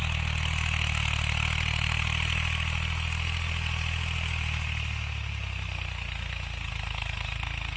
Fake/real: real